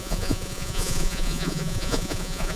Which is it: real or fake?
fake